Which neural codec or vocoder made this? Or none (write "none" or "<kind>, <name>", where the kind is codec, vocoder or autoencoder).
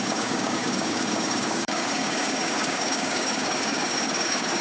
codec, DAC